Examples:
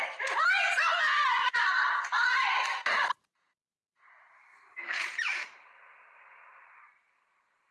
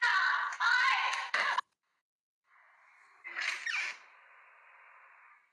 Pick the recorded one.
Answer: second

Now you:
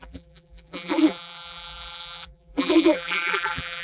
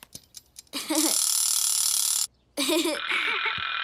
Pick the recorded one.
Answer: second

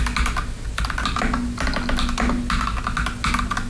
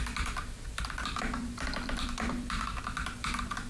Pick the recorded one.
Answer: first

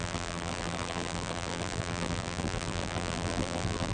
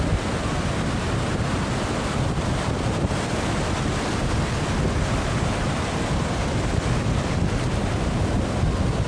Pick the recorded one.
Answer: second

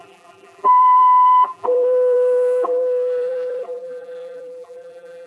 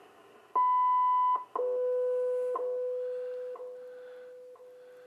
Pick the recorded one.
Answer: second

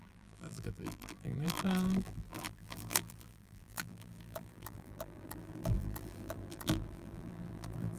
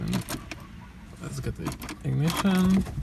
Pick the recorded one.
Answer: second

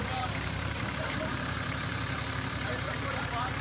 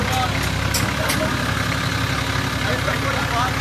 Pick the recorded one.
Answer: second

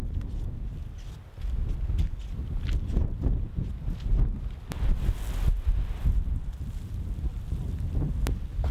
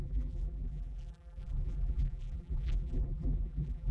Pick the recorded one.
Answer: first